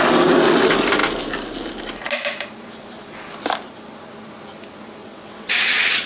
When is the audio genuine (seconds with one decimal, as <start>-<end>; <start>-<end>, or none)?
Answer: 0.0-5.0